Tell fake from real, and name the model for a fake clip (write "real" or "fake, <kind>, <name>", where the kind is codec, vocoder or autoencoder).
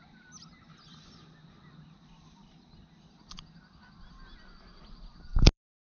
real